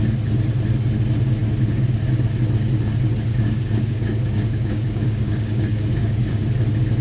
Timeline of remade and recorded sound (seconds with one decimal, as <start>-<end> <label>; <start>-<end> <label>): 0.0-3.3 recorded; 3.3-6.4 remade; 6.4-7.0 recorded